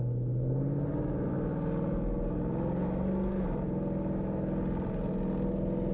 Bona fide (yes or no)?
yes